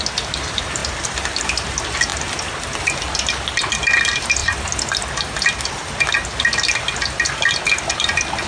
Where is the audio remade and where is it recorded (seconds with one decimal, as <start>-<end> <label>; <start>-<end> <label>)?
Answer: 0.0-8.5 recorded